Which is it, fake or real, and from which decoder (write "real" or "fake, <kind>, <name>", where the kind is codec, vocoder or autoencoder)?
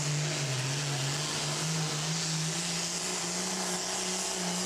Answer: real